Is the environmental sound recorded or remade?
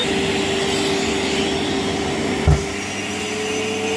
recorded